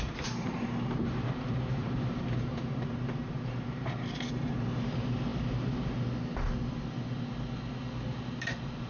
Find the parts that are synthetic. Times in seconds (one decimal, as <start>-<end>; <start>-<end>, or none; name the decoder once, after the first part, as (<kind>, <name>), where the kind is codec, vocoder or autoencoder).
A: 0.0-5.3 (vocoder, BigVGAN v2); 8.2-8.9